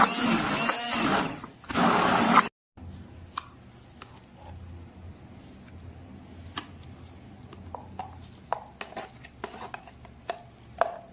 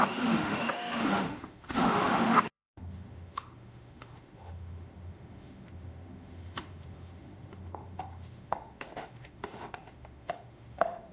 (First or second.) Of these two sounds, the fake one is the second